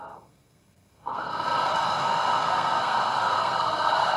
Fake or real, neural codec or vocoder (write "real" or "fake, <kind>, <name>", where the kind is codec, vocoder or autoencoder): fake, codec, SNAC